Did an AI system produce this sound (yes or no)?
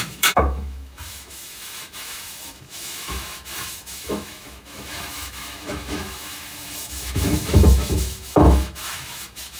yes